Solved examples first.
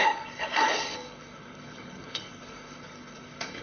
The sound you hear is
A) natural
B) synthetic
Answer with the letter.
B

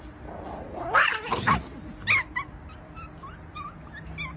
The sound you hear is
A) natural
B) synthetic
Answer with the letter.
A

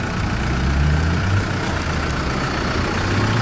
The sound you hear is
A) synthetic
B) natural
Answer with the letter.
B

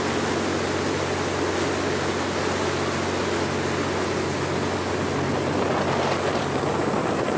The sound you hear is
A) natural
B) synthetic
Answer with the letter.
A